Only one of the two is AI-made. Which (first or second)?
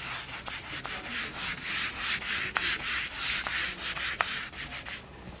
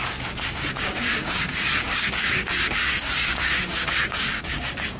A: second